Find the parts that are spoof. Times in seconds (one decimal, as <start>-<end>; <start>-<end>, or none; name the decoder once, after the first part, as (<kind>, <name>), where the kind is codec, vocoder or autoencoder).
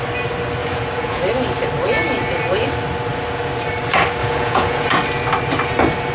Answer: 0.6-1.2 (vocoder, Vocos); 4.2-4.9